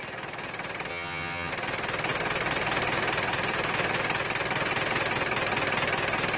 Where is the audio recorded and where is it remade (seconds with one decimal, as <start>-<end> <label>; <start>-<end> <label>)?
0.0-0.9 recorded; 0.9-1.5 remade; 1.5-6.4 recorded

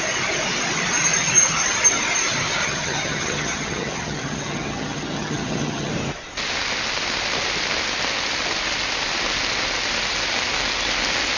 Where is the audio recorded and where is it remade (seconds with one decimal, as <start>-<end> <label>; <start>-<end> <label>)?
0.0-2.6 recorded; 2.6-5.9 remade; 5.9-11.4 recorded

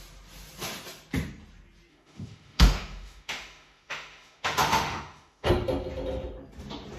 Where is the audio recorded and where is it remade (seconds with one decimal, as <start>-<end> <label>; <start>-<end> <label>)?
0.0-1.9 recorded; 1.9-5.5 remade; 5.5-7.0 recorded

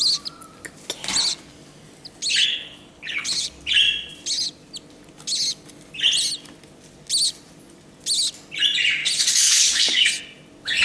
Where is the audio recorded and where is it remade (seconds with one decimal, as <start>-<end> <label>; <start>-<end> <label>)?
0.0-2.5 recorded; 2.5-3.5 remade; 3.5-9.0 recorded; 9.0-10.1 remade; 10.1-10.8 recorded

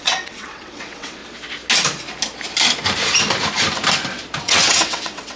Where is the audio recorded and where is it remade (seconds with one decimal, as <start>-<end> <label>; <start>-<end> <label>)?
0.0-1.2 remade; 1.2-4.4 recorded; 4.4-5.4 remade

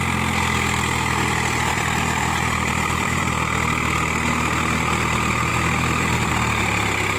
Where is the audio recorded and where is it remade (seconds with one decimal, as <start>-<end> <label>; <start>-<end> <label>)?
0.0-1.7 recorded; 1.7-3.3 remade; 3.3-5.5 recorded; 5.5-6.3 remade; 6.3-7.2 recorded

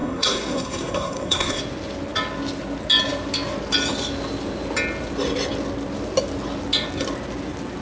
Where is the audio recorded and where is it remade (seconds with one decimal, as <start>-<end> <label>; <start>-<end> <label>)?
0.0-1.6 remade; 1.6-7.8 recorded